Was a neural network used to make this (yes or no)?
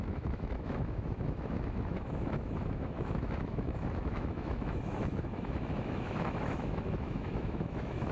yes